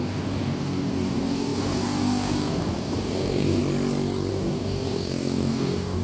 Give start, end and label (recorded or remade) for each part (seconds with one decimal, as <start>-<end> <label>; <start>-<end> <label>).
0.0-3.6 remade; 3.6-4.3 recorded; 4.3-6.0 remade